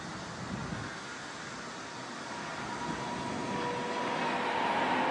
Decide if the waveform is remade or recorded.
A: recorded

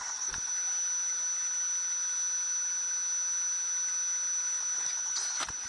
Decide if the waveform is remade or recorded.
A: recorded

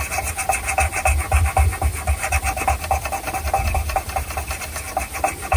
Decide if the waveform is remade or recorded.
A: recorded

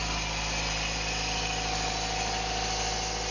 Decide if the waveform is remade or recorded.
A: recorded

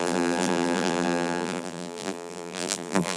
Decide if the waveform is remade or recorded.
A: remade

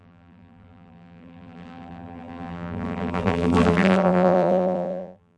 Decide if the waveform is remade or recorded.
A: remade